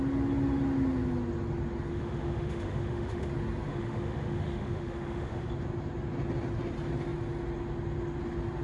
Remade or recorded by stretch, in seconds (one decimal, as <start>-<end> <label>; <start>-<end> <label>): 0.0-1.9 recorded; 1.9-3.3 remade; 3.3-3.7 recorded; 3.7-5.5 remade; 5.5-8.6 recorded